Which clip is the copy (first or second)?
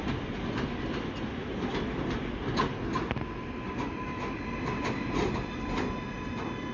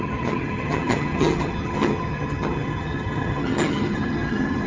second